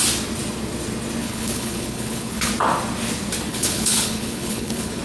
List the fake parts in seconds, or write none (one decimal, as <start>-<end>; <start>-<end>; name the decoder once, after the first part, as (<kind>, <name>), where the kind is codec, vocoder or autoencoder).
1.2-2.5 (codec, HILCodec); 3.5-5.0